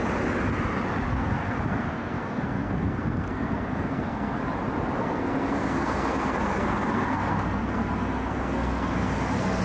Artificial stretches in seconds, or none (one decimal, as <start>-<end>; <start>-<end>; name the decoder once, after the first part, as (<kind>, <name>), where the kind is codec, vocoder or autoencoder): 1.1-4.4 (codec, SNAC); 5.0-9.6